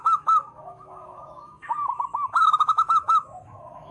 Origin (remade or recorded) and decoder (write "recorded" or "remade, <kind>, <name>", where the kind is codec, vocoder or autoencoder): remade, autoencoder, DAC-VAE